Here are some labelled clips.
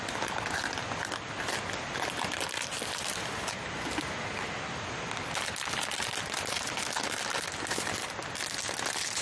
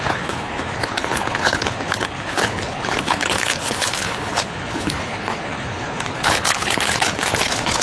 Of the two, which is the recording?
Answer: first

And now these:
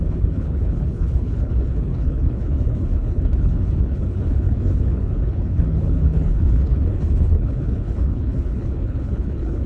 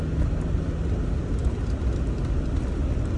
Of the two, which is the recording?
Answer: second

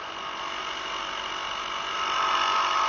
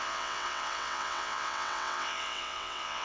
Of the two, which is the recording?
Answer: first